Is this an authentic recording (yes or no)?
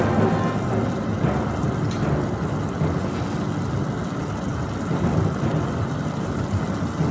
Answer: yes